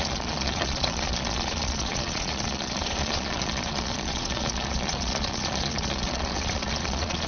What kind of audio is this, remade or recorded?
remade